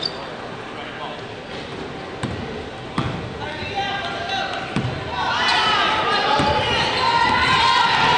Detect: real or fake real